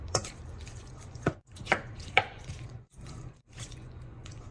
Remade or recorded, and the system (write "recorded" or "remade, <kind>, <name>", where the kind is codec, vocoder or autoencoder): remade, vocoder, Vocos